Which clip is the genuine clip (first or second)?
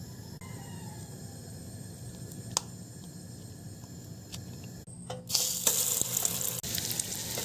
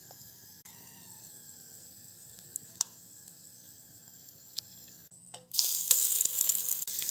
first